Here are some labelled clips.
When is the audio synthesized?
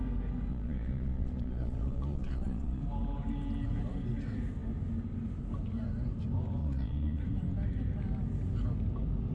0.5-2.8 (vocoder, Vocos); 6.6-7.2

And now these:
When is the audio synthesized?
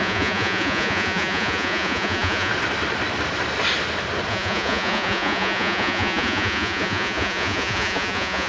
0.0-2.5 (vocoder, Vocos); 4.3-8.5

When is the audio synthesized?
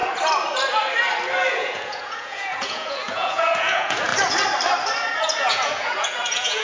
1.5-4.1 (vocoder, Vocos); 5.2-6.6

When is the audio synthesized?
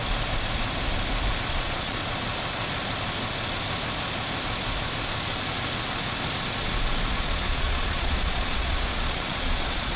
1.5-2.0 (vocoder, Vocos); 7.1-10.0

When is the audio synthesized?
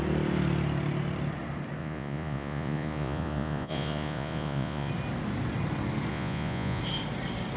1.8-4.9 (vocoder, Vocos); 6.1-6.8